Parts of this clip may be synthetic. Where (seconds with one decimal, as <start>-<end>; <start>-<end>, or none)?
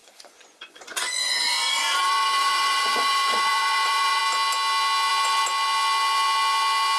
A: 0.0-4.2